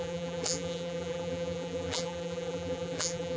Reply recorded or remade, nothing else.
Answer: remade